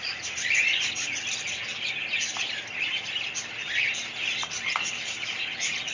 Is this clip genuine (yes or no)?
yes